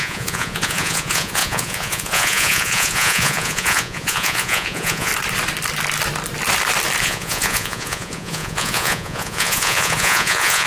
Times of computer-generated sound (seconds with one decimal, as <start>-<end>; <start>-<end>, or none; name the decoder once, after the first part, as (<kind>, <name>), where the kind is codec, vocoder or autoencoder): 0.0-5.1 (vocoder, Vocos); 7.0-10.7

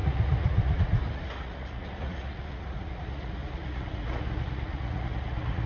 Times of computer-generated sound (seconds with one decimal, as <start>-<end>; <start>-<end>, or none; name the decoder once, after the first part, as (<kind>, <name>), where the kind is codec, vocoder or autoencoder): 0.0-5.7 (vocoder, Vocos)

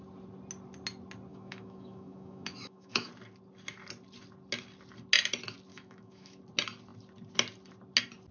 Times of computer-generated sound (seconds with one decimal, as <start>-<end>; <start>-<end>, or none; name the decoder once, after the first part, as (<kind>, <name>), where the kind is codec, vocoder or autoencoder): 1.3-3.1 (autoencoder, DAC-VAE); 5.7-6.4

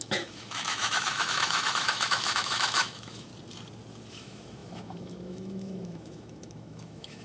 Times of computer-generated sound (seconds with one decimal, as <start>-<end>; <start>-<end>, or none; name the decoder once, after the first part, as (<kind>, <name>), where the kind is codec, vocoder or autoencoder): 0.0-3.3 (autoencoder, DAC-VAE); 4.1-7.2

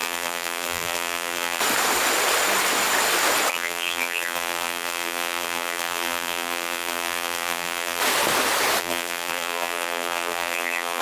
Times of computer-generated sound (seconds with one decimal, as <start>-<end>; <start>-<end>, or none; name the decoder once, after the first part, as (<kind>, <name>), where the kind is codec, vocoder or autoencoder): 0.0-1.6 (vocoder, BigVGAN v2); 3.5-8.0; 8.8-11.0